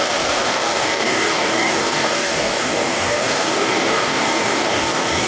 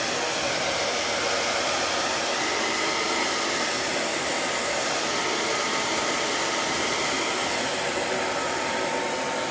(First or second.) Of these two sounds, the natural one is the second